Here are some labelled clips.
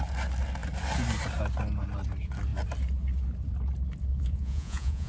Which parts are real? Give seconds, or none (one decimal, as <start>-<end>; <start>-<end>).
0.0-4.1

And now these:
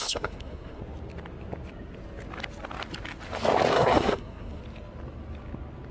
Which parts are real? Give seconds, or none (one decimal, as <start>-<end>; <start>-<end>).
0.8-3.7; 4.6-5.9

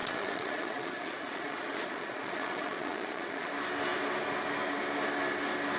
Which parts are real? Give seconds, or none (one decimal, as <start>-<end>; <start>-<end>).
3.5-5.8